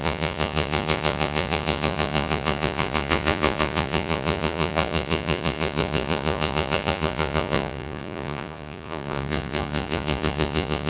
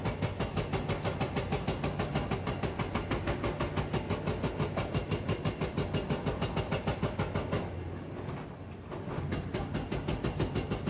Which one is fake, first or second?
first